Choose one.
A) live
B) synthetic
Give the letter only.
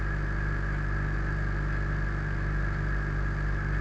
A